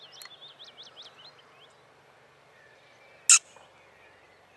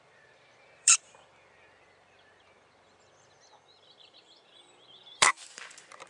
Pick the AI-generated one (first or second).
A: second